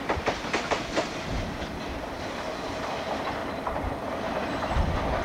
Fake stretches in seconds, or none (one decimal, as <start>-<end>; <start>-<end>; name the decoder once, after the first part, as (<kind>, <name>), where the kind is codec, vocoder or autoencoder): 0.0-0.9 (vocoder, BigVGAN v2); 3.4-4.2